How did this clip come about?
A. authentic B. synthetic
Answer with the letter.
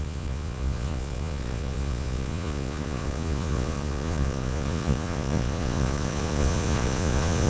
B